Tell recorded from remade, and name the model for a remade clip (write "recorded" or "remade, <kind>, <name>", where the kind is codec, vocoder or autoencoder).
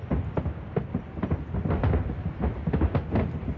recorded